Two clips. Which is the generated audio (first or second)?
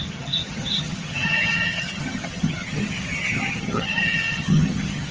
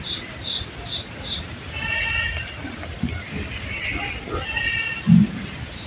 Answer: first